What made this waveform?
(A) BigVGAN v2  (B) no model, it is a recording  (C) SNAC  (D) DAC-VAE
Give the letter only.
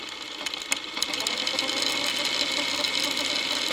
B